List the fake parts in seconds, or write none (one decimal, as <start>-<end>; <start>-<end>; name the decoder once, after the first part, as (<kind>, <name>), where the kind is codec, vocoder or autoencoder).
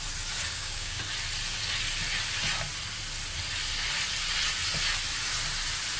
0.5-1.0 (codec, DAC)